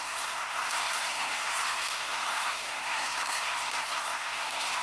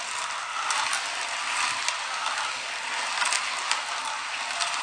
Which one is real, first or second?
second